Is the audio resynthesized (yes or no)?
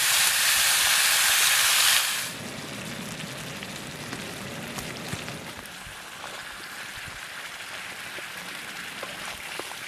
no